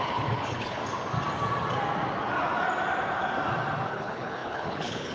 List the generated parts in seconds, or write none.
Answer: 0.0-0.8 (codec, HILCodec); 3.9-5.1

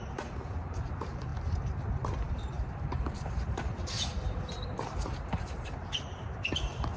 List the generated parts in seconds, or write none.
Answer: 0.0-7.0 (vocoder, BigVGAN v2)

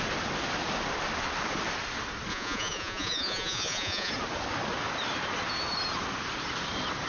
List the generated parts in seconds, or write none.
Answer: 2.3-4.1 (vocoder, Vocos)

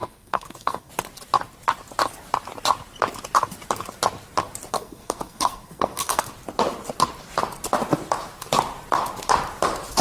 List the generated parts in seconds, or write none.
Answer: 0.0-0.9 (codec, SNAC); 4.7-6.3

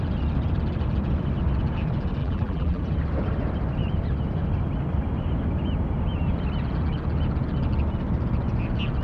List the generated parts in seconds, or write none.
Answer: 2.2-2.8 (vocoder, BigVGAN v2)

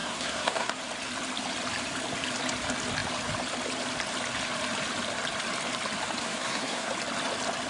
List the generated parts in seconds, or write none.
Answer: 0.0-0.8 (codec, SNAC); 6.2-6.9

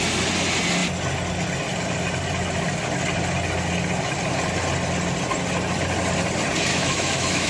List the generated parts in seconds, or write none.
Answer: 6.7-7.5 (autoencoder, DAC-VAE)

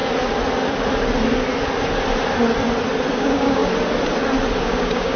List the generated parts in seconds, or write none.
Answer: 3.1-3.6 (codec, DAC); 4.6-5.2